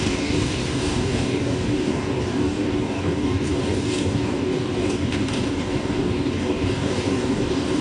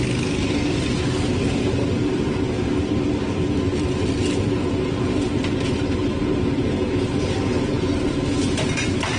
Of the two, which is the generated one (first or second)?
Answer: first